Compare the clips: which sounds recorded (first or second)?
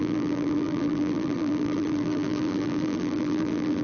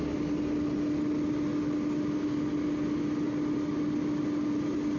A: second